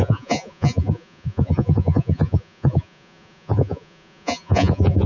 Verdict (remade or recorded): remade